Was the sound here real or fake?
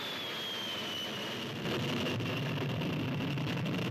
real